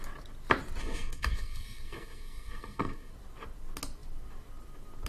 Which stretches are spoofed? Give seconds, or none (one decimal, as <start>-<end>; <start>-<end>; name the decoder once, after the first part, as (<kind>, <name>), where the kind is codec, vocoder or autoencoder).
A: 0.8-3.1 (codec, SNAC)